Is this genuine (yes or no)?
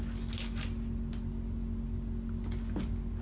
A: yes